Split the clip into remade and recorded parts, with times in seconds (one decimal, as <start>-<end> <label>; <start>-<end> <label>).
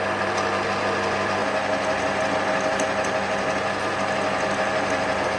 0.0-5.4 recorded